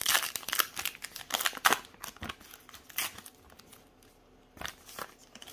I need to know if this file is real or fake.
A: real